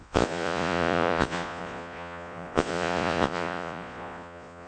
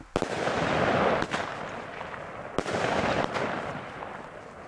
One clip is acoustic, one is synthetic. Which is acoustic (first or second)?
second